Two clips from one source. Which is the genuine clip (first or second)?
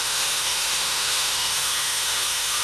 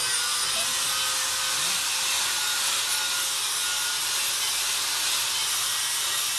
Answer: second